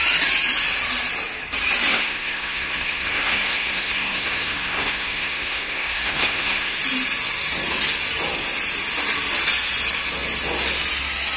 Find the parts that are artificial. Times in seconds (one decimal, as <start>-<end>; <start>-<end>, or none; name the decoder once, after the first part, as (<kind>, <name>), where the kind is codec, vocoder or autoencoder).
1.9-6.8 (codec, SNAC)